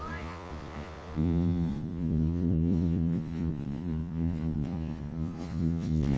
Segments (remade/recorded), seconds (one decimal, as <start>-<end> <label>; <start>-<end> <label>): 0.0-6.2 remade